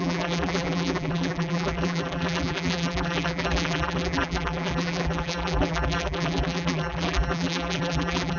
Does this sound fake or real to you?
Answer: fake